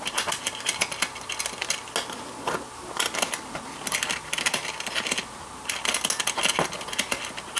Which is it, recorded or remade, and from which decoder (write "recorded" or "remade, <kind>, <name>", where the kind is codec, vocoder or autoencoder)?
recorded